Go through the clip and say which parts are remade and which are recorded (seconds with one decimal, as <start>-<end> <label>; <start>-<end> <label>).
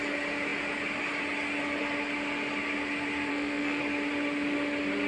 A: 0.0-3.3 recorded; 3.3-3.8 remade; 3.8-5.1 recorded